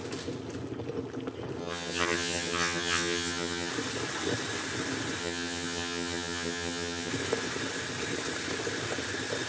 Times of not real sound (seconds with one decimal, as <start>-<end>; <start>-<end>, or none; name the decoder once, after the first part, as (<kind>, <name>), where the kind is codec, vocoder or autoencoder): 1.6-3.7 (vocoder, HiFi-GAN); 5.2-7.1